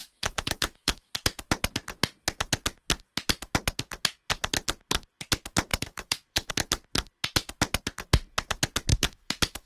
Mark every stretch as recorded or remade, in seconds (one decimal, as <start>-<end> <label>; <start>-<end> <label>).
0.0-1.1 remade; 1.1-5.7 recorded; 5.7-6.5 remade; 6.5-8.9 recorded; 8.9-9.7 remade